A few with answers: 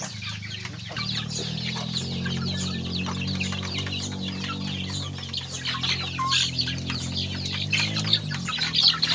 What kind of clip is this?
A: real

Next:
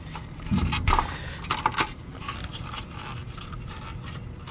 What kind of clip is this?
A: real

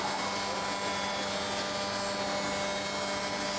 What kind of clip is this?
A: real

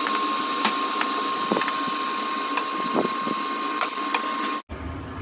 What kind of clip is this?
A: real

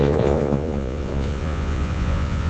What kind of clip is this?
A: fake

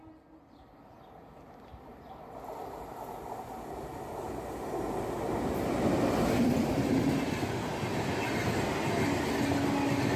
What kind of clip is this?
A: real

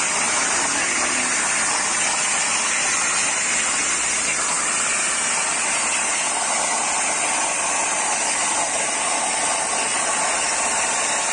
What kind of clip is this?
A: real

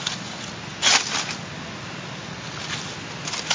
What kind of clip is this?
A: real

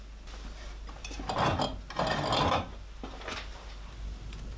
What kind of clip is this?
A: real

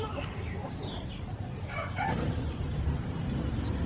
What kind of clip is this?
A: fake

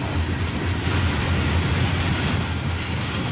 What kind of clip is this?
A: real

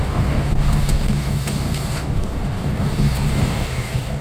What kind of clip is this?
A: fake